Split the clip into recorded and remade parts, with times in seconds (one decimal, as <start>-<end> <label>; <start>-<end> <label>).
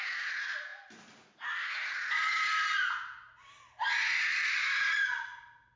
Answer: 0.0-5.8 recorded